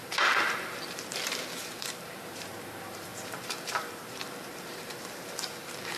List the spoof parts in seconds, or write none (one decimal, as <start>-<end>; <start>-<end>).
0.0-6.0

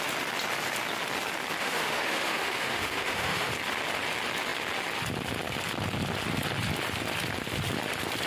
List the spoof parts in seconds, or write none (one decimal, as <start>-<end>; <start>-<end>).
1.6-3.5

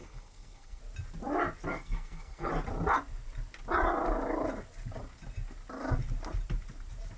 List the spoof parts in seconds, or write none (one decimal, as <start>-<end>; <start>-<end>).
0.0-0.8; 1.7-2.5

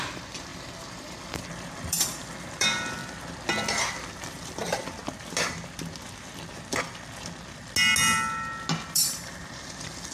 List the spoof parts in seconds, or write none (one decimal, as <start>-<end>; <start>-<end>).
0.0-3.0; 4.2-5.0; 8.9-10.1

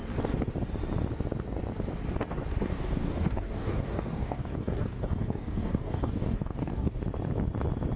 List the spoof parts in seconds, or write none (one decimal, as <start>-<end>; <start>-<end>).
2.7-7.0